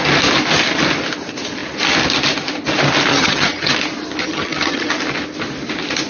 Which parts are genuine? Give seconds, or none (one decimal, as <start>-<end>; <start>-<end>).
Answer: 0.0-3.1; 3.7-4.2; 4.9-6.1